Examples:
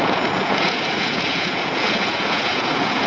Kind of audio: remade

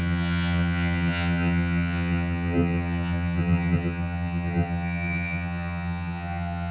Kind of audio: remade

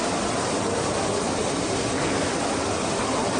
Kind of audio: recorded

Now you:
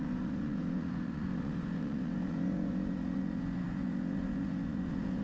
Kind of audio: remade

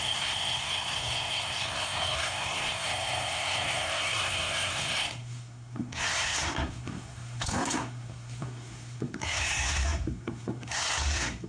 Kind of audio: remade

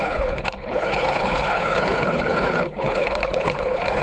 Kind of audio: remade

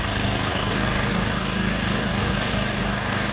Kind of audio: remade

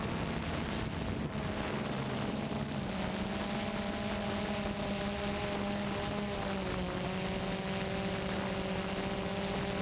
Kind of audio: recorded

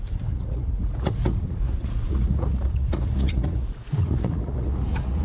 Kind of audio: remade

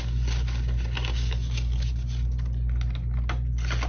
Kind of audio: recorded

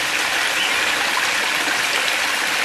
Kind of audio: recorded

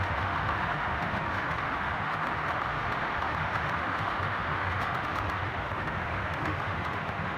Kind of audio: remade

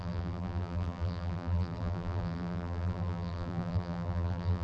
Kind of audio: remade